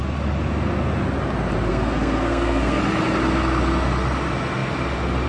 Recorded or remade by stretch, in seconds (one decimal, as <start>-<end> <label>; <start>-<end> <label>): 0.0-1.7 recorded; 1.7-2.8 remade; 2.8-5.3 recorded